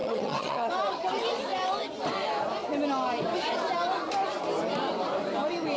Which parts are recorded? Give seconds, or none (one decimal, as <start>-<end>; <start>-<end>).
0.7-5.8